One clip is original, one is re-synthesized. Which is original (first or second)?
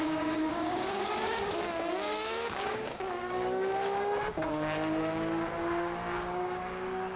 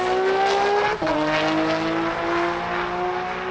second